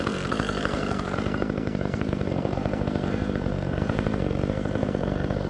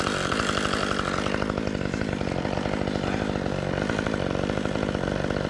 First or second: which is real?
second